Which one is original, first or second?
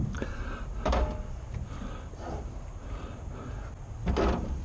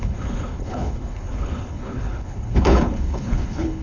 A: first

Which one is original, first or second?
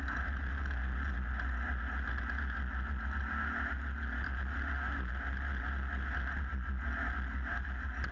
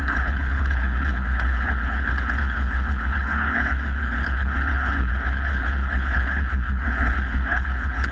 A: first